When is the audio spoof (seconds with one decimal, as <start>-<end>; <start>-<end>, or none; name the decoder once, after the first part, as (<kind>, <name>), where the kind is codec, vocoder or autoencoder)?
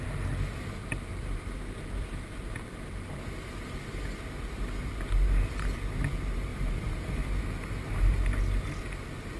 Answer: 1.1-2.6 (vocoder, BigVGAN v2); 6.5-7.4